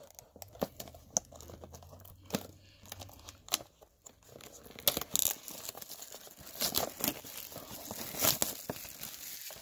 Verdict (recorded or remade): recorded